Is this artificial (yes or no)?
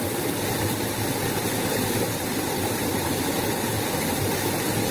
no